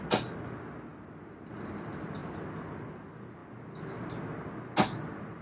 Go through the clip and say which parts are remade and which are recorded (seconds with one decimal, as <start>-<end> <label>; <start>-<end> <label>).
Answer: 0.0-5.4 recorded